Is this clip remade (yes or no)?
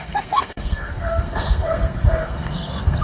yes